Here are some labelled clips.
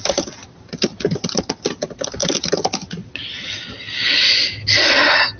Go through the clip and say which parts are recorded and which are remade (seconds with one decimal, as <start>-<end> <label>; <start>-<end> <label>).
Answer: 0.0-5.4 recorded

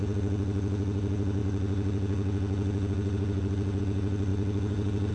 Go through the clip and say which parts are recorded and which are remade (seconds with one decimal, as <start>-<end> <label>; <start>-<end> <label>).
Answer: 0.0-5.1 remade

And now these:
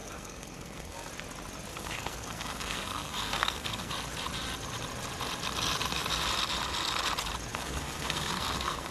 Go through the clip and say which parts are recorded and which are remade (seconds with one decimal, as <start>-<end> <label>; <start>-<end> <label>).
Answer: 0.0-1.1 remade; 1.1-1.7 recorded; 1.7-3.9 remade; 3.9-7.5 recorded; 7.5-8.9 remade

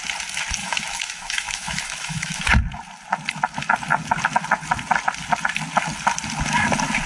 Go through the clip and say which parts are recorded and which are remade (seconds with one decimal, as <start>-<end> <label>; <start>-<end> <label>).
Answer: 0.0-0.6 recorded; 0.6-2.4 remade; 2.4-7.1 recorded